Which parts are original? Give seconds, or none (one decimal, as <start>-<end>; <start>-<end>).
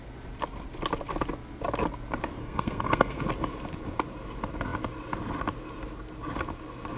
0.0-2.4; 3.2-7.0